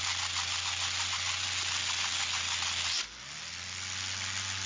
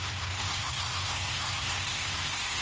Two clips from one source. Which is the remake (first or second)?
second